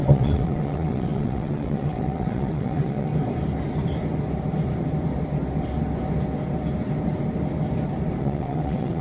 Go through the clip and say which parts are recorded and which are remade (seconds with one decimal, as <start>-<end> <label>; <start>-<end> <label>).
0.0-3.1 remade; 3.1-8.2 recorded; 8.2-9.0 remade

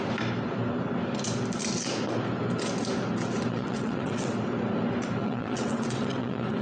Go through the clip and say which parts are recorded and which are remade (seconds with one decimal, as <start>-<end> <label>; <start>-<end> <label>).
0.0-3.5 recorded; 3.5-4.3 remade; 4.3-5.2 recorded; 5.2-6.6 remade

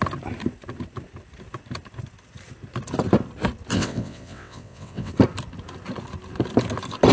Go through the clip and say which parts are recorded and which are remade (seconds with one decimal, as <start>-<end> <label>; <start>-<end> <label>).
0.0-3.7 recorded; 3.7-5.1 remade; 5.1-7.1 recorded

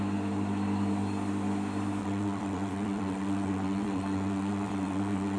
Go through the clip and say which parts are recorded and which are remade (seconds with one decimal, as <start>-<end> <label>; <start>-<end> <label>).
0.0-2.0 recorded; 2.0-5.4 remade

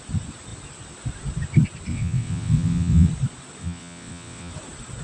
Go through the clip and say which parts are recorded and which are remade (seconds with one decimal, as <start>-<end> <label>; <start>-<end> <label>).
0.0-1.9 recorded; 1.9-3.1 remade; 3.1-3.6 recorded; 3.6-4.5 remade; 4.5-5.0 recorded